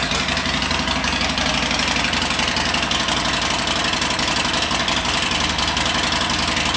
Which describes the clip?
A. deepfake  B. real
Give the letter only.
B